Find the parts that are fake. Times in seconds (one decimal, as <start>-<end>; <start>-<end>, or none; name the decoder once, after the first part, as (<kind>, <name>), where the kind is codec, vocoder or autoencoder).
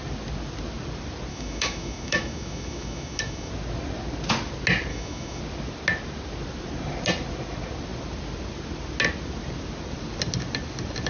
1.3-3.5 (autoencoder, DAC-VAE); 4.9-5.4